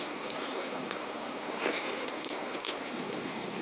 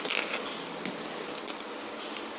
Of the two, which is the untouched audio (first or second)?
second